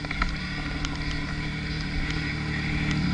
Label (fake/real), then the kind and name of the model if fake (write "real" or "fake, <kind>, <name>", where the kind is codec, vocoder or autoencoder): real